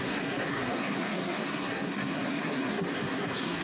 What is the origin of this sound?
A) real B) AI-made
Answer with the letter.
B